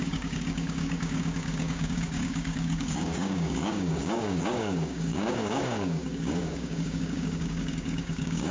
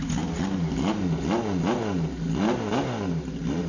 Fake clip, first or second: first